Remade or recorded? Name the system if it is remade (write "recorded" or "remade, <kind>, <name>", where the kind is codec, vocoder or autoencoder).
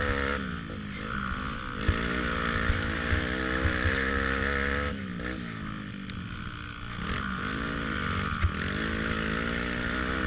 recorded